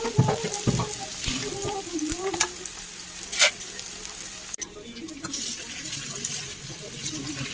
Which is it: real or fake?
real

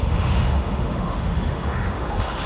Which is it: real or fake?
fake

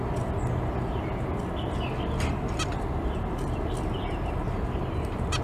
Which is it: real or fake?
real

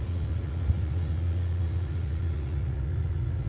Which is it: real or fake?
fake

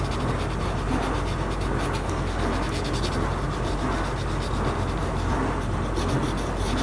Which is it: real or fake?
real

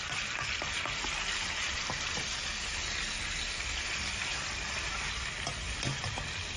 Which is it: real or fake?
fake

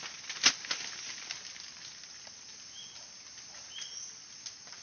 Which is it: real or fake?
real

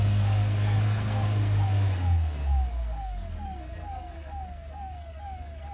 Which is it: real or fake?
fake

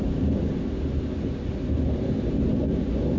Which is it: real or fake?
real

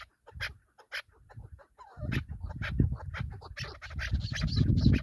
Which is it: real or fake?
real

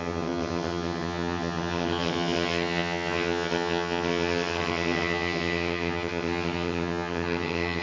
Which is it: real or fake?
fake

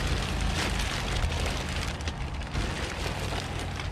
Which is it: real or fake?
real